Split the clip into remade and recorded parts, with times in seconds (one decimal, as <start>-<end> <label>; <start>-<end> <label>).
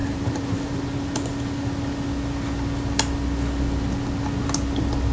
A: 0.0-0.8 remade; 0.8-5.1 recorded